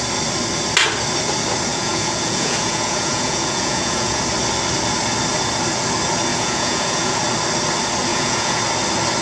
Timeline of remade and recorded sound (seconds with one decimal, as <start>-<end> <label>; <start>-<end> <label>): 0.0-1.7 recorded; 1.7-4.2 remade; 4.2-6.3 recorded; 6.3-7.2 remade; 7.2-8.1 recorded; 8.1-8.6 remade; 8.6-9.2 recorded